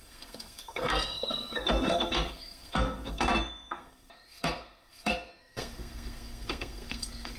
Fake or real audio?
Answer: fake